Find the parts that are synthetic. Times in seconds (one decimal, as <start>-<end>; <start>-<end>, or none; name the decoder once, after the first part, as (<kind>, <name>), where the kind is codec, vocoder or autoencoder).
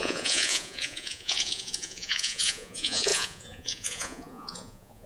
0.0-5.1 (vocoder, Vocos)